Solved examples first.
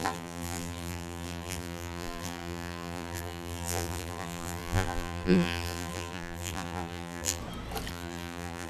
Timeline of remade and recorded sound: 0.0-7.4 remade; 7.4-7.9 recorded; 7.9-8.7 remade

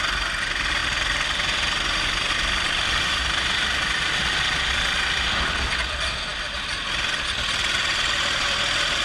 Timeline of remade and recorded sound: 0.0-0.8 recorded; 0.8-2.3 remade; 2.3-9.0 recorded